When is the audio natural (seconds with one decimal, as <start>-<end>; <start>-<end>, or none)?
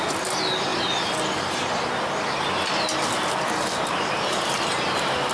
0.0-5.3